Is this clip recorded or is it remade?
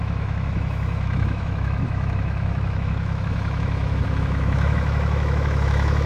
remade